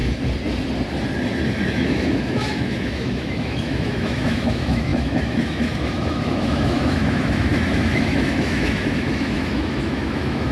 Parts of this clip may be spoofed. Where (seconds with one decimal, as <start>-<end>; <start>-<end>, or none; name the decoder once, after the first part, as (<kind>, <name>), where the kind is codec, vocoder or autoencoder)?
1.7-10.5 (autoencoder, DAC-VAE)